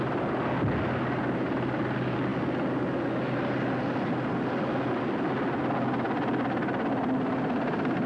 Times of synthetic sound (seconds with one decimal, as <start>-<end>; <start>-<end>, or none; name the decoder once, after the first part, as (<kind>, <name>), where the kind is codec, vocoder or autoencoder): none

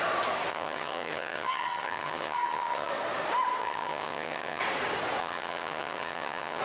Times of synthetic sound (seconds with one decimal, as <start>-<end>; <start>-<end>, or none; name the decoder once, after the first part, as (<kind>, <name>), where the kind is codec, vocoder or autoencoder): 0.5-2.9 (vocoder, HiFi-GAN); 3.6-4.6; 5.2-6.6

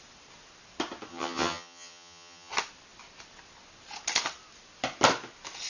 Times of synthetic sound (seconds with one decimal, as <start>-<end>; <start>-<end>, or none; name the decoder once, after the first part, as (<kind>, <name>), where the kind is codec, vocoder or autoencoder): 1.1-2.5 (vocoder, HiFi-GAN)

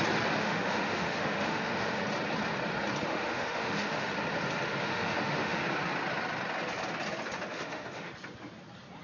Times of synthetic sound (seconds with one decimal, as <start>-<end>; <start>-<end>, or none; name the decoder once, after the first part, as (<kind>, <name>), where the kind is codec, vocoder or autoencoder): 0.4-2.0 (autoencoder, DAC-VAE); 3.1-4.1; 4.8-5.6; 7.5-8.1

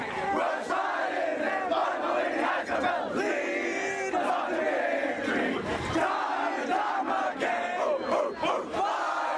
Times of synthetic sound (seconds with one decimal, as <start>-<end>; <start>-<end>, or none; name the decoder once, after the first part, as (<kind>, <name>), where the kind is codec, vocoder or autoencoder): none

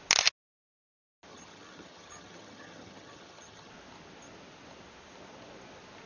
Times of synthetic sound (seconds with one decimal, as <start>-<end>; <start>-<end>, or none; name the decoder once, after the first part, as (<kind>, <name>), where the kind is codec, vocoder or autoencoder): 1.3-3.7 (vocoder, HiFi-GAN)

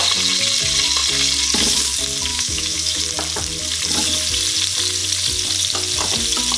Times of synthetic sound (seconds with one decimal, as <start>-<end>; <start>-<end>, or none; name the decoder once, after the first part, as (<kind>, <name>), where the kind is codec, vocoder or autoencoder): 2.3-3.0 (autoencoder, DAC-VAE)